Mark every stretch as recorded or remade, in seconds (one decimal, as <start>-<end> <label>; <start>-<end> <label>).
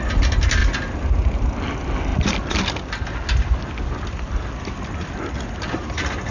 0.0-6.3 recorded